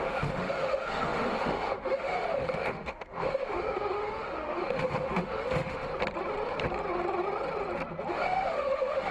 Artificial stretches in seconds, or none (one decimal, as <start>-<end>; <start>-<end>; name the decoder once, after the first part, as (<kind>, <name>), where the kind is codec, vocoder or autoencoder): 0.0-5.9 (autoencoder, DAC-VAE); 8.1-9.1